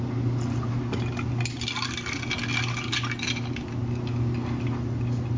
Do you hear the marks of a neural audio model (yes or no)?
no